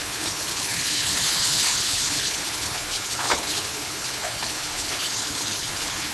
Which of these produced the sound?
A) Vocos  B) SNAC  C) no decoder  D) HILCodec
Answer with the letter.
D